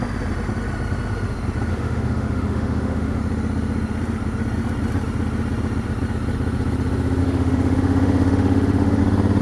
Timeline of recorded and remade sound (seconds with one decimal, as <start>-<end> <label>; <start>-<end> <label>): 0.0-1.7 recorded; 1.7-3.2 remade; 3.2-7.2 recorded; 7.2-9.0 remade; 9.0-9.4 recorded